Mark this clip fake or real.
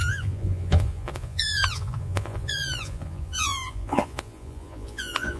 fake